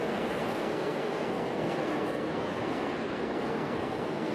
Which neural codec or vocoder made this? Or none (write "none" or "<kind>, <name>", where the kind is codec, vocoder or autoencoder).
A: codec, SNAC